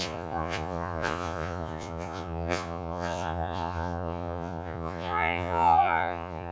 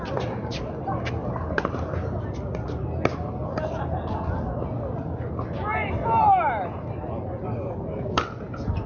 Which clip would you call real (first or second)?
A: second